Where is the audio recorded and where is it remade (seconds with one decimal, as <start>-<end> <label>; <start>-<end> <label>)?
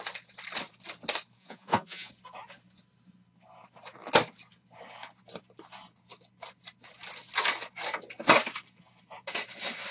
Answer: 0.0-1.4 recorded; 1.4-2.1 remade; 2.1-9.9 recorded